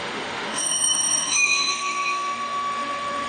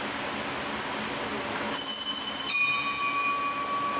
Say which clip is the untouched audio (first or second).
second